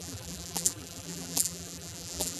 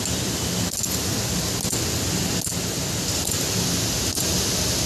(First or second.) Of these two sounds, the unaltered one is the second